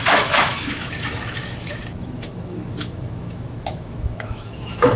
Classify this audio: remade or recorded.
remade